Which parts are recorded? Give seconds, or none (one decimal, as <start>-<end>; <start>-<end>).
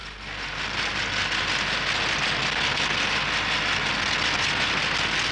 0.0-5.3